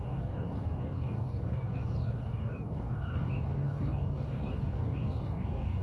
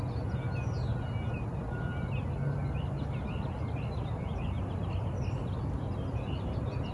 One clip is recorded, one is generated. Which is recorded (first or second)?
second